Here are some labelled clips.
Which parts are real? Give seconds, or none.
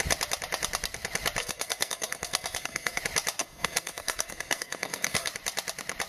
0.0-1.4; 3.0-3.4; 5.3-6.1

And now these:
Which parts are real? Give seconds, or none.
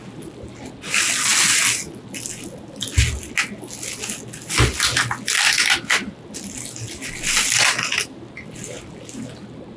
0.0-9.8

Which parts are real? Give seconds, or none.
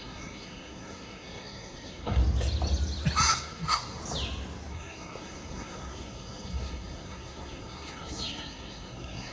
2.2-3.3; 4.0-4.7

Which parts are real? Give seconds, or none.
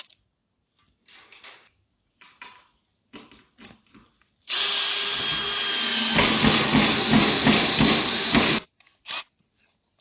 0.0-10.0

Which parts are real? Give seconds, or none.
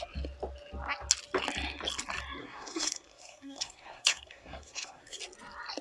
0.0-2.4; 5.2-5.8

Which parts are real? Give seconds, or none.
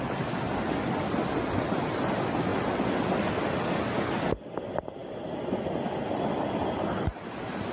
0.0-7.7